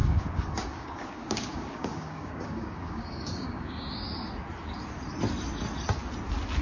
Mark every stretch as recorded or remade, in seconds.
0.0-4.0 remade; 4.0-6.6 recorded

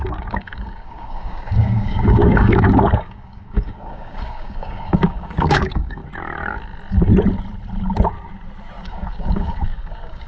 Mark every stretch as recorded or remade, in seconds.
0.0-6.0 remade; 6.0-8.8 recorded; 8.8-10.3 remade

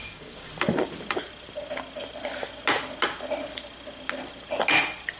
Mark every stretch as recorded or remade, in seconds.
0.0-0.5 remade; 0.5-5.2 recorded

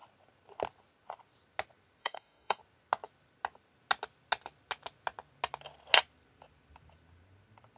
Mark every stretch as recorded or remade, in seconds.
0.0-2.0 recorded; 2.0-2.6 remade; 2.6-7.8 recorded

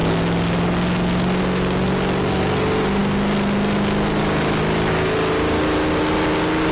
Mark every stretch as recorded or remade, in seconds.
0.0-6.7 recorded

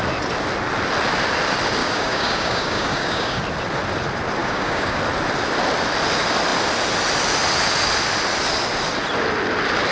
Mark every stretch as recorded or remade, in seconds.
0.0-1.8 recorded; 1.8-3.4 remade; 3.4-4.4 recorded; 4.4-5.0 remade; 5.0-9.9 recorded

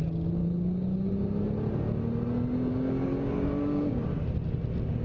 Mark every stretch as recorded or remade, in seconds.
0.0-0.4 recorded; 0.4-1.1 remade; 1.1-2.7 recorded; 2.7-4.0 remade; 4.0-5.0 recorded

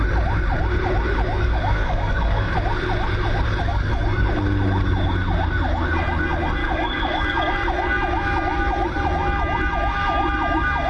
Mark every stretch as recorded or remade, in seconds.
0.0-1.3 recorded; 1.3-2.5 remade; 2.5-3.7 recorded; 3.7-4.3 remade; 4.3-6.6 recorded; 6.6-7.5 remade; 7.5-10.9 recorded